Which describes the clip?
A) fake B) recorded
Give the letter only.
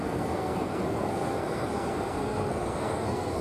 A